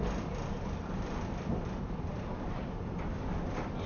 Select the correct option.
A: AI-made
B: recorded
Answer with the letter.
A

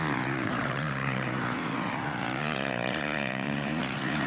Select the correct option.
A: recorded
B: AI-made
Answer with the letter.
B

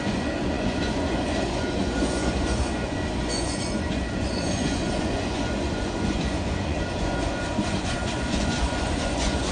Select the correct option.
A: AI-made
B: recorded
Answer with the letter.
A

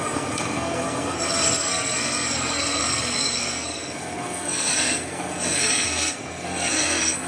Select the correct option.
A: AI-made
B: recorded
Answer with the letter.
A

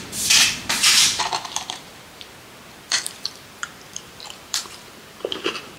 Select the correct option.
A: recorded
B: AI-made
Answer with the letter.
B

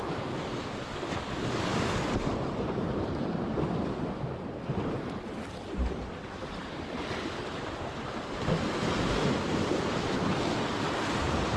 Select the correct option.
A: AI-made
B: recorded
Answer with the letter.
A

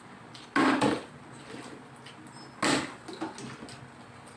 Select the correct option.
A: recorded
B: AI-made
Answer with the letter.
A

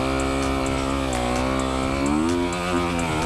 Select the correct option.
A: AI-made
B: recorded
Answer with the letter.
B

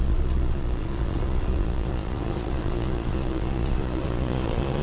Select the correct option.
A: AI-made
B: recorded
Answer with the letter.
A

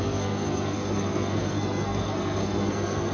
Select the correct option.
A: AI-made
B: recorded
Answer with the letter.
A